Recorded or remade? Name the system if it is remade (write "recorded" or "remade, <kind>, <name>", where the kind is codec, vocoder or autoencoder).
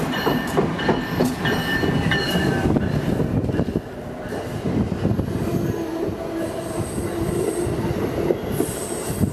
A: recorded